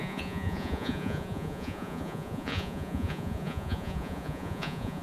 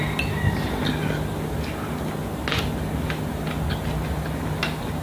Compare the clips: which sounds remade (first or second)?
first